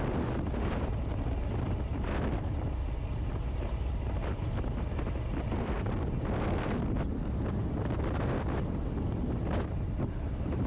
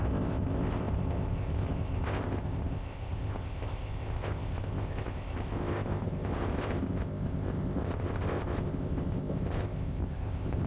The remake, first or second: second